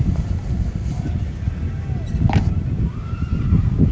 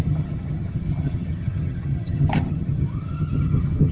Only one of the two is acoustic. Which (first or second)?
first